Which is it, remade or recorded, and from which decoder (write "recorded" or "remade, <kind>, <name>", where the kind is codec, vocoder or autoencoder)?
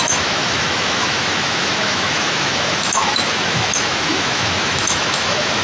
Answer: remade, autoencoder, DAC-VAE